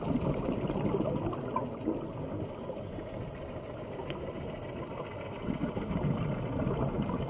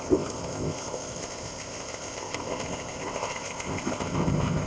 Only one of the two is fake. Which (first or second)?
second